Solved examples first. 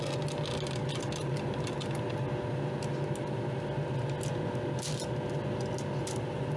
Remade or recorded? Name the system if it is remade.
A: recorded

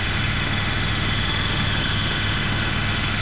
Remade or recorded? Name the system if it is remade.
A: remade, autoencoder, DAC-VAE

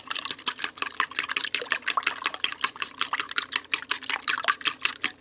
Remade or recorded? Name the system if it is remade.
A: recorded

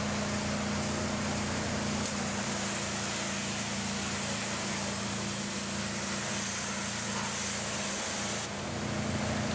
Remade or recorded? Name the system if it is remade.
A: recorded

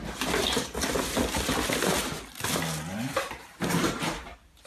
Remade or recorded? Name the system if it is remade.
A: recorded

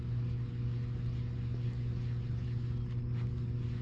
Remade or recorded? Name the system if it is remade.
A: recorded